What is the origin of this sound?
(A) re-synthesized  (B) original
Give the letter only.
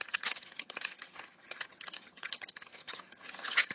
A